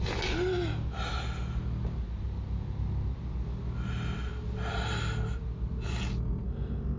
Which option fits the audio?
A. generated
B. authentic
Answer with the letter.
B